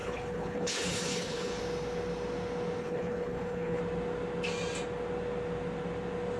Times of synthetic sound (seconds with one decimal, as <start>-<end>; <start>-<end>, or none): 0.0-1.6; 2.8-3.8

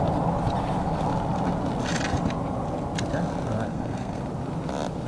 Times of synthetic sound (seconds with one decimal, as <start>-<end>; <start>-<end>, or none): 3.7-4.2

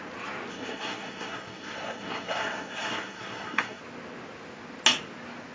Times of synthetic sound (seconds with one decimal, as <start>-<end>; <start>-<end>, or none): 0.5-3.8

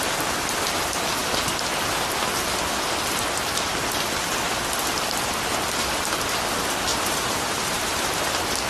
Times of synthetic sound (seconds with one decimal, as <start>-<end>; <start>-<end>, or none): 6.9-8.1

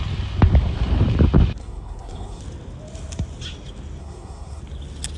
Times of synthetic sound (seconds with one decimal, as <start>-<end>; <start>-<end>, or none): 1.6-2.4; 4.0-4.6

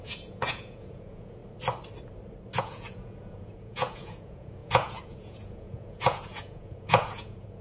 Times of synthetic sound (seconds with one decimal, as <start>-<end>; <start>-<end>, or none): 0.0-1.4; 2.6-7.6